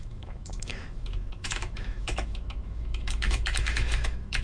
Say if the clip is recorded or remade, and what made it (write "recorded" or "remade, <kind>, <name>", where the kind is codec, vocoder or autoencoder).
remade, autoencoder, DAC-VAE